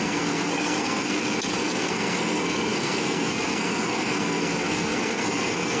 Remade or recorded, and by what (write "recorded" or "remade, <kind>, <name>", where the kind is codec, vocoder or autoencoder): remade, codec, SNAC